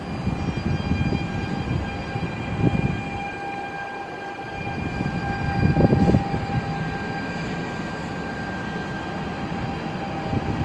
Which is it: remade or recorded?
recorded